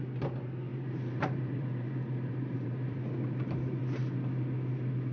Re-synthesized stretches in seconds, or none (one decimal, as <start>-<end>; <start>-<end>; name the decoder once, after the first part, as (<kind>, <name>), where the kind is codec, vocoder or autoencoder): 0.7-3.8 (vocoder, BigVGAN v2)